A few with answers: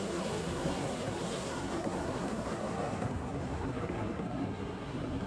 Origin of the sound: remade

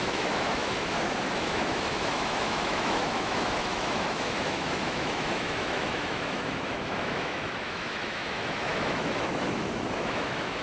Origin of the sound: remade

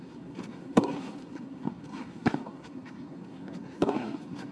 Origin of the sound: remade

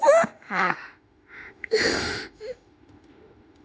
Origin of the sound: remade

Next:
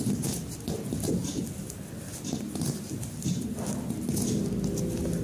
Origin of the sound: recorded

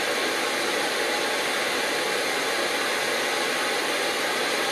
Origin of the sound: remade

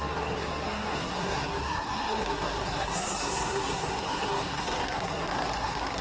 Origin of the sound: remade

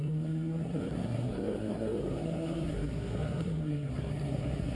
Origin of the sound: remade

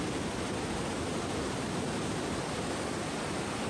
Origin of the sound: recorded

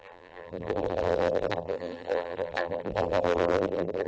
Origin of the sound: remade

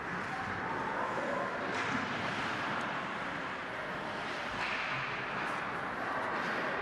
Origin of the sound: recorded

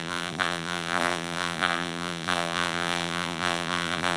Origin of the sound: remade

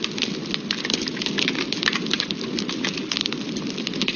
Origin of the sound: recorded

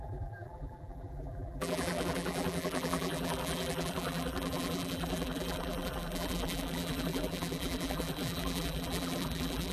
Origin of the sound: remade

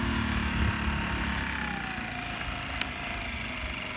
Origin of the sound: recorded